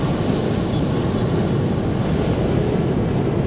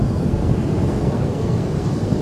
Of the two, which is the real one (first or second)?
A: first